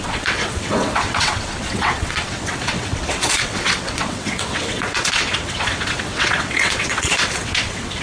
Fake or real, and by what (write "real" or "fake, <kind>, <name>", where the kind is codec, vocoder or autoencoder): fake, vocoder, WaveNeXt